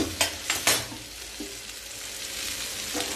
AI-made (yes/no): no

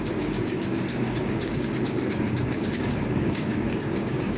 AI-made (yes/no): yes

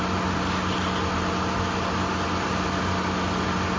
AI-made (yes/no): no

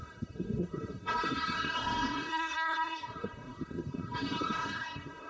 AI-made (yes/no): yes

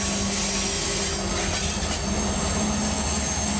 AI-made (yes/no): no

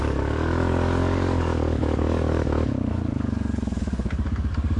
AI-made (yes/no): yes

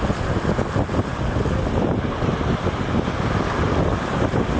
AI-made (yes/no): no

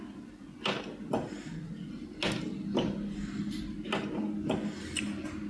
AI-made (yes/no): no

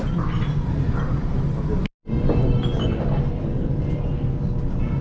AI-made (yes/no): no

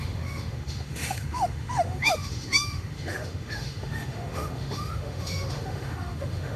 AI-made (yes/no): yes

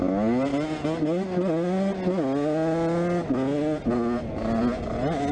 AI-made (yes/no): no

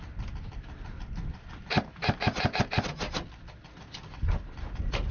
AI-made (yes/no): no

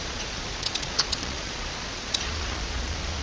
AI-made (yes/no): yes